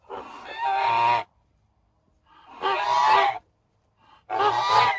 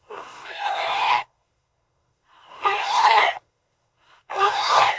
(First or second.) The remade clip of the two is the second